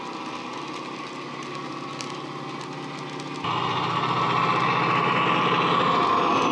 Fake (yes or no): no